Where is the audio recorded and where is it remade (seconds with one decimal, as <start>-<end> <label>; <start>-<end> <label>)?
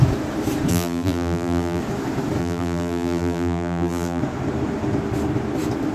0.0-0.7 recorded; 0.7-1.8 remade; 1.8-2.4 recorded; 2.4-4.2 remade; 4.2-5.9 recorded